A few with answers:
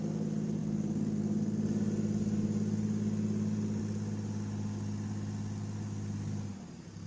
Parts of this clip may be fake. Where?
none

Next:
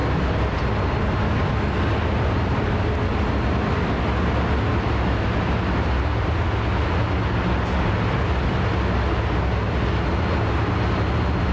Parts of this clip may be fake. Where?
none

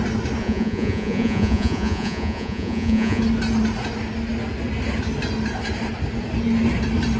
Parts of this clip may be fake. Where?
0.4-3.2

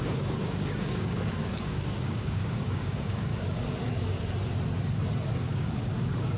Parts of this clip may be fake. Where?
0.0-3.3; 5.3-6.4

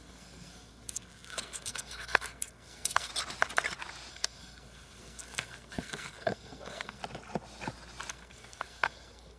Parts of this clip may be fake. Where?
0.0-3.1; 4.1-7.0; 8.1-9.4